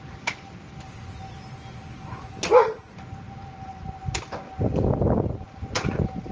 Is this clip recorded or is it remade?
recorded